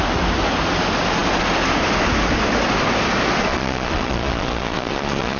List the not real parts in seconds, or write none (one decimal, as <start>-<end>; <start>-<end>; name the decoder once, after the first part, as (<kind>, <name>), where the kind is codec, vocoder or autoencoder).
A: 3.5-5.4 (vocoder, Vocos)